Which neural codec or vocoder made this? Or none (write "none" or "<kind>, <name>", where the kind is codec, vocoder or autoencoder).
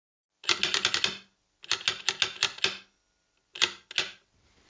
none